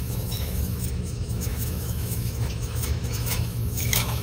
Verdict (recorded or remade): remade